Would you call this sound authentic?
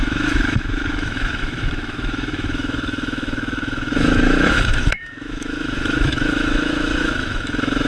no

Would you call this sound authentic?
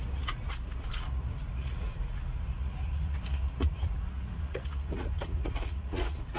no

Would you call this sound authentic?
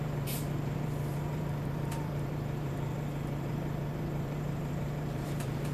no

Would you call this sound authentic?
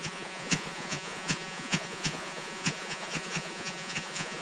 no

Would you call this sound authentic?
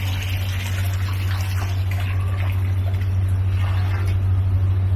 yes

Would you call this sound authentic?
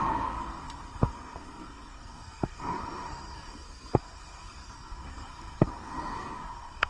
no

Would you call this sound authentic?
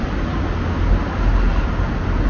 yes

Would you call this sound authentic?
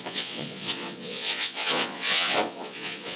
no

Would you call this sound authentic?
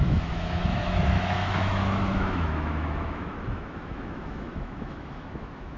no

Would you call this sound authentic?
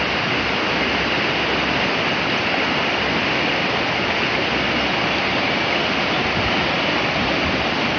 yes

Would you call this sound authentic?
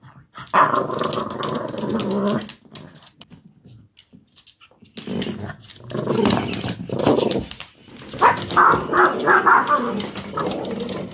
yes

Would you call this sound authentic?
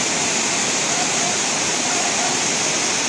yes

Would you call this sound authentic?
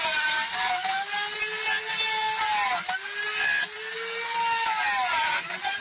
yes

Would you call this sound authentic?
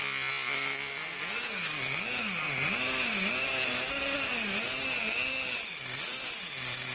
yes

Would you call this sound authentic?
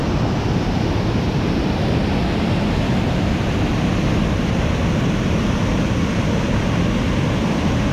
yes